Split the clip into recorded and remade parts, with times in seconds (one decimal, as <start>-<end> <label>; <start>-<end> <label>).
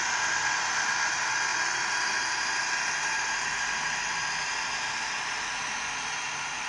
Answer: 0.0-6.7 recorded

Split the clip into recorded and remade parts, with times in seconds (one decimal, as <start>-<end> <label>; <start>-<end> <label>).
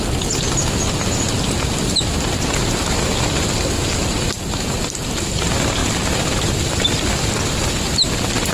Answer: 0.0-8.5 recorded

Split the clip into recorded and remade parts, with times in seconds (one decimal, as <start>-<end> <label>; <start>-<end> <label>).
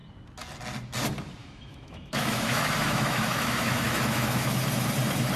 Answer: 0.0-1.4 recorded; 1.4-4.6 remade; 4.6-5.4 recorded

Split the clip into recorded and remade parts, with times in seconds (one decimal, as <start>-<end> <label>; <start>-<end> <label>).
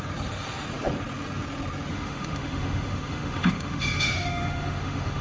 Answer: 0.0-1.9 recorded; 1.9-5.2 remade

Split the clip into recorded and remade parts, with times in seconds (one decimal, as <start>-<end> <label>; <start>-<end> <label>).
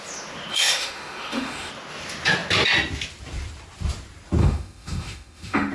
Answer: 0.0-0.5 recorded; 0.5-1.7 remade; 1.7-4.4 recorded; 4.4-5.7 remade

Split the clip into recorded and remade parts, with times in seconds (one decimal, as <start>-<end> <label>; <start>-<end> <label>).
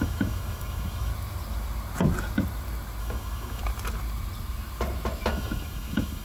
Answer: 0.0-1.1 remade; 1.1-3.0 recorded; 3.0-3.6 remade; 3.6-5.3 recorded; 5.3-6.2 remade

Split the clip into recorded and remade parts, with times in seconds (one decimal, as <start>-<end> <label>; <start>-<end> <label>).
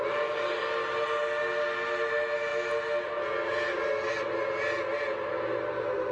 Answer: 0.0-6.1 recorded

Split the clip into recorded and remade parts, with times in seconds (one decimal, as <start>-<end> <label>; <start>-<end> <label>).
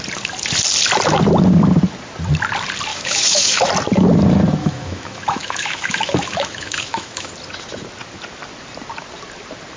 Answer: 0.0-2.9 recorded; 2.9-3.7 remade; 3.7-4.6 recorded; 4.6-7.3 remade; 7.3-9.8 recorded